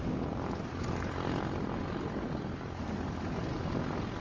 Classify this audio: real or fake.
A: real